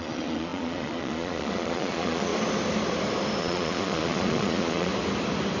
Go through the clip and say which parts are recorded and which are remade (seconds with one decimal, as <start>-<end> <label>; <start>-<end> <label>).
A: 0.0-2.3 remade; 2.3-3.4 recorded; 3.4-4.9 remade; 4.9-5.6 recorded